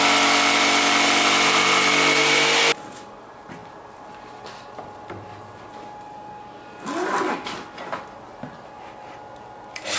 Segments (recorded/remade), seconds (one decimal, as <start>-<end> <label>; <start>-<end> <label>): 0.0-10.0 recorded